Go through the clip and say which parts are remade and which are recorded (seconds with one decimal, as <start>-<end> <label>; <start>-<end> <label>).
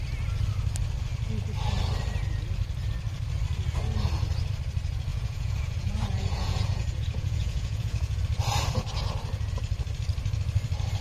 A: 0.0-5.1 recorded; 5.1-8.2 remade; 8.2-11.0 recorded